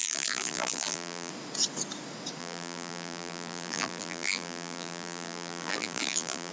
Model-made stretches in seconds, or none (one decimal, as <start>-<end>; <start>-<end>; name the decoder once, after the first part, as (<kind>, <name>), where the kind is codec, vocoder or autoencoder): 0.0-1.3 (vocoder, BigVGAN v2); 2.4-6.5